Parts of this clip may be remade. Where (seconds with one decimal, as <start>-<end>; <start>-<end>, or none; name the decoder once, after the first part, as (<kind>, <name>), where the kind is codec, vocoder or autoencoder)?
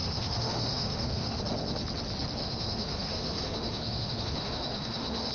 0.0-1.4 (autoencoder, DAC-VAE); 2.4-5.3